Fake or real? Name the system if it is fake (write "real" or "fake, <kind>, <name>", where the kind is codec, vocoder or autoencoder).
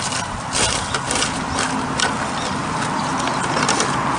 real